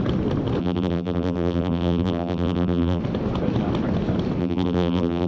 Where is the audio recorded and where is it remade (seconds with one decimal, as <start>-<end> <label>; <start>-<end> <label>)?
0.0-0.6 recorded; 0.6-3.0 remade; 3.0-4.4 recorded; 4.4-5.3 remade